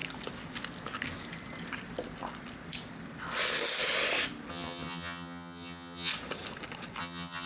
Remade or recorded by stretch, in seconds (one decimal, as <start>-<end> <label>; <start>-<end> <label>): 0.0-4.5 recorded; 4.5-6.1 remade; 6.1-7.0 recorded; 7.0-7.5 remade